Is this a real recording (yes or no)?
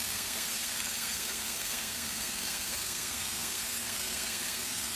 no